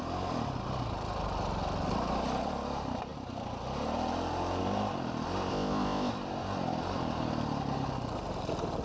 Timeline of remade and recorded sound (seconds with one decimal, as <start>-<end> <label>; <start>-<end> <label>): 0.0-5.5 recorded; 5.5-6.1 remade; 6.1-8.8 recorded